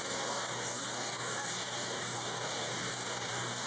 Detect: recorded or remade remade